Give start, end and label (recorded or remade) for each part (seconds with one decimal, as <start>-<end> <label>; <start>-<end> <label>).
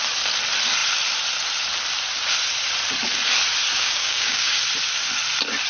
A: 0.0-3.7 recorded; 3.7-4.6 remade; 4.6-5.7 recorded